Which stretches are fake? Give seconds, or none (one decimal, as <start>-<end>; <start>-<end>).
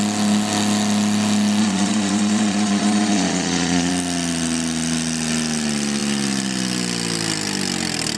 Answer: 1.6-3.9